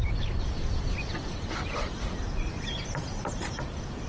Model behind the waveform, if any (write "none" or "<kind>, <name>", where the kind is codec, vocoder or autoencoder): vocoder, BigVGAN v2